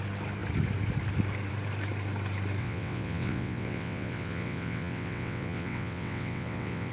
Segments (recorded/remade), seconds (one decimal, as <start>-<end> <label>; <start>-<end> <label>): 0.0-2.6 recorded; 2.6-6.9 remade